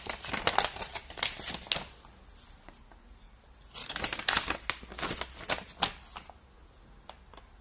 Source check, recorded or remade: recorded